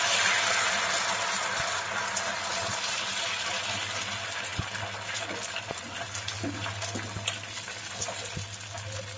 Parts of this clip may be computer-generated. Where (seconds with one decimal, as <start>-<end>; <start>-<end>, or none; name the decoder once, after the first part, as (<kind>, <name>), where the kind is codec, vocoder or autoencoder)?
none